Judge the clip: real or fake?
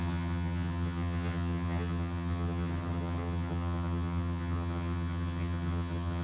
fake